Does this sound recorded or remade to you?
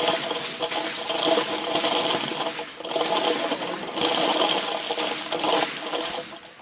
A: recorded